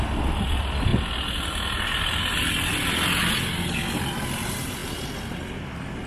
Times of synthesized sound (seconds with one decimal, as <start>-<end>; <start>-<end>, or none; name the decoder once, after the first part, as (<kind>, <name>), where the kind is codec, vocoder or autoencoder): none